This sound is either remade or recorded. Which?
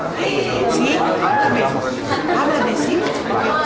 recorded